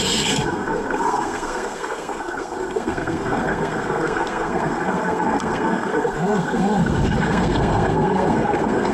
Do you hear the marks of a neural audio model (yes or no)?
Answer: yes